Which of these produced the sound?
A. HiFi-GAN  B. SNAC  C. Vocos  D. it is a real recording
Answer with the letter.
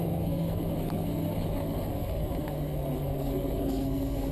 B